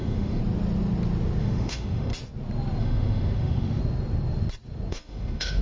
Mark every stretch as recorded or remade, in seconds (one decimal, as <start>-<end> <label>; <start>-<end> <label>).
0.0-0.4 remade; 0.4-1.4 recorded; 1.4-2.1 remade; 2.1-2.8 recorded; 2.8-3.8 remade; 3.8-4.9 recorded; 4.9-5.6 remade